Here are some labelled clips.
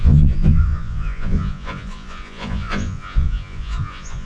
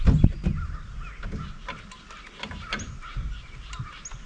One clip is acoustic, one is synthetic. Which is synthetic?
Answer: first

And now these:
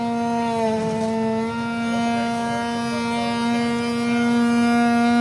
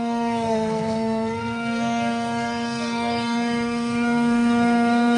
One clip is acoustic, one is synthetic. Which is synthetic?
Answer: second